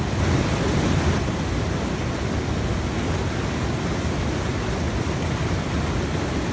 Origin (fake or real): real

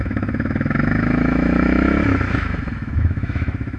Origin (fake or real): fake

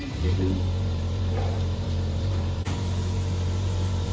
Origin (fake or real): fake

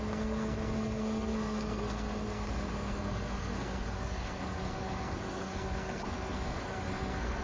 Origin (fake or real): fake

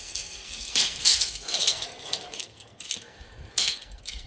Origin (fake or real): fake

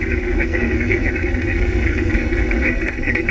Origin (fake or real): fake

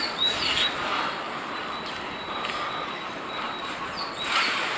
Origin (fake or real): real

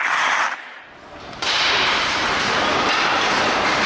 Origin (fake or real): fake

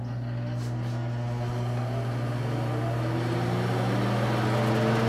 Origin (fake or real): real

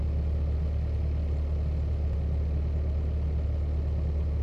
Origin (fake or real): real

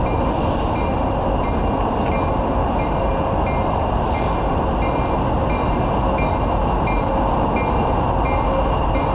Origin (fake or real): real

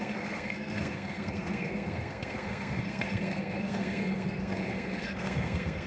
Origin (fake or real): fake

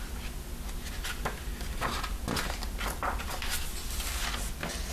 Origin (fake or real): real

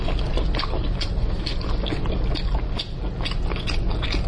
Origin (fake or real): real